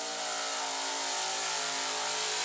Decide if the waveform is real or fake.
real